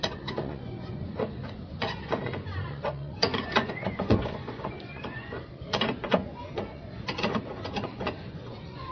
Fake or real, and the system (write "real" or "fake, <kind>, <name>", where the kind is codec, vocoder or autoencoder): fake, vocoder, Vocos